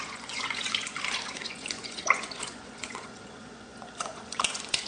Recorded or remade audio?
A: remade